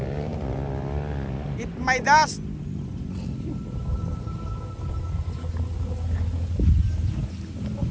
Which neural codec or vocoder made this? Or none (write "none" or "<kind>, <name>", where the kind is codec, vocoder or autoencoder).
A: none